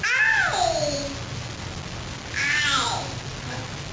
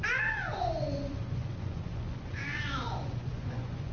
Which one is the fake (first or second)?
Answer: second